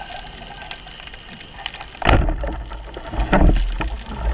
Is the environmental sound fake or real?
real